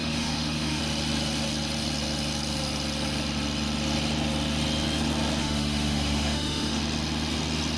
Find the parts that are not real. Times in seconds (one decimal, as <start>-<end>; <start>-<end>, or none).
0.0-0.8; 5.4-6.8